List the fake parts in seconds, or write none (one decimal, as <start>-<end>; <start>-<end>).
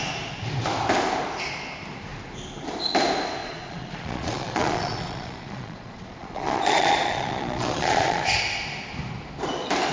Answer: 3.4-8.4